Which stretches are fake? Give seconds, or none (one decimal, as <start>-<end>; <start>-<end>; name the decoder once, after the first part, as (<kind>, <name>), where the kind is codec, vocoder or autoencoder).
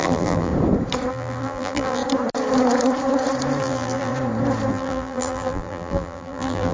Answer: 0.0-0.5 (vocoder, BigVGAN v2); 1.1-2.0; 3.6-4.1; 4.7-6.7